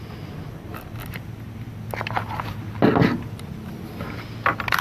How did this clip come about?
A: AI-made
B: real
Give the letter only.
B